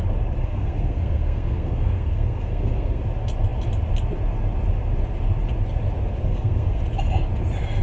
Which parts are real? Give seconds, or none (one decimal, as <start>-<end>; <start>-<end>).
0.0-0.4; 3.0-6.2; 6.8-7.8